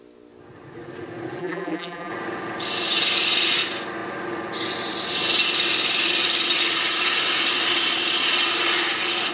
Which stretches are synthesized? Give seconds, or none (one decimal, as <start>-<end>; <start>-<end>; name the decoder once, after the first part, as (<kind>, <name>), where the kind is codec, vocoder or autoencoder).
1.4-2.1 (vocoder, BigVGAN v2)